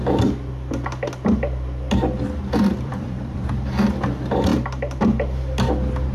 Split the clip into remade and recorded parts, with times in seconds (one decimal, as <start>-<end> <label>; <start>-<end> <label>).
0.0-2.7 recorded; 2.7-3.5 remade; 3.5-4.5 recorded; 4.5-5.0 remade; 5.0-6.1 recorded